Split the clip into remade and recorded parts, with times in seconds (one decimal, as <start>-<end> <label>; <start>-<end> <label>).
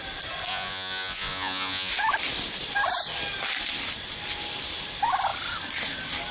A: 0.0-0.5 recorded; 0.5-1.9 remade; 1.9-6.3 recorded